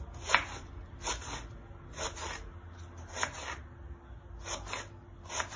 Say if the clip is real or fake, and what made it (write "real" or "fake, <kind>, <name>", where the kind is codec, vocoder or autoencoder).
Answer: real